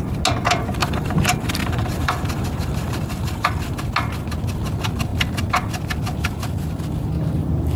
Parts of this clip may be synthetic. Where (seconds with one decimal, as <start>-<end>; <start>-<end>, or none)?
0.8-3.7